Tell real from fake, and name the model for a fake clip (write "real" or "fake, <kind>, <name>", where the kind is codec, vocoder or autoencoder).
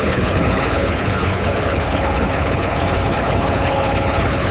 fake, codec, HILCodec